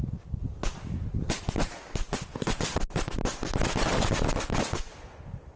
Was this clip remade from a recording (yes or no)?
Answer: no